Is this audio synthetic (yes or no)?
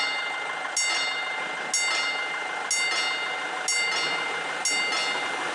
no